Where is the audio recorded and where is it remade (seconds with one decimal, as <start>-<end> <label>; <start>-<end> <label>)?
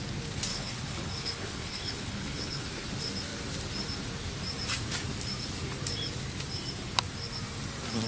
0.0-0.5 recorded; 0.5-2.7 remade; 2.7-8.1 recorded